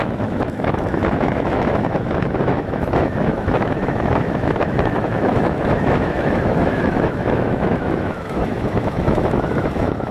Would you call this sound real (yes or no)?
no